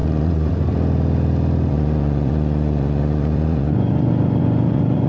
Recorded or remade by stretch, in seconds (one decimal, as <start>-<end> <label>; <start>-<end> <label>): 0.0-0.5 remade; 0.5-1.7 recorded; 1.7-5.1 remade

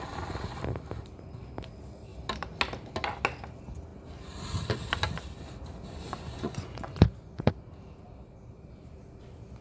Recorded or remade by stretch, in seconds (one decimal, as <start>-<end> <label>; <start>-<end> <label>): 0.0-6.0 recorded; 6.0-7.5 remade; 7.5-9.6 recorded

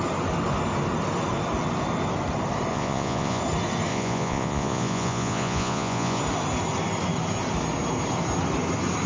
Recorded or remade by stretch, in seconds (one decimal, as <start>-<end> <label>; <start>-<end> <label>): 0.0-2.7 recorded; 2.7-3.4 remade; 3.4-3.9 recorded; 3.9-6.2 remade; 6.2-9.1 recorded